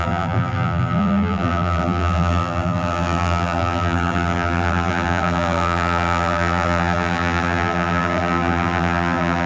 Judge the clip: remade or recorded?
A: remade